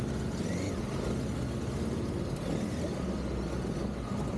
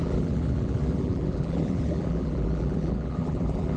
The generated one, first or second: second